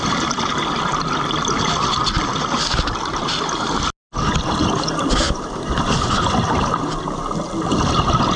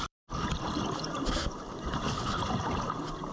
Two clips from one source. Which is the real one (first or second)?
first